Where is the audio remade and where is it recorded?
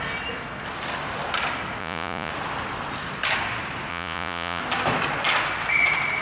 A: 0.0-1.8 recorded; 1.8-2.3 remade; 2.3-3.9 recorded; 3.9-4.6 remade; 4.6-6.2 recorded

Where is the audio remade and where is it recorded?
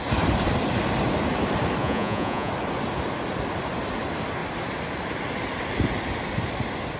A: 0.0-1.8 recorded; 1.8-2.5 remade; 2.5-7.0 recorded